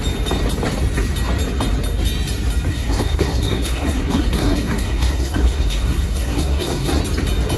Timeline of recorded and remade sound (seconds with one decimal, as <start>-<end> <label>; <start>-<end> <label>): 0.0-2.7 recorded; 2.7-7.0 remade; 7.0-7.6 recorded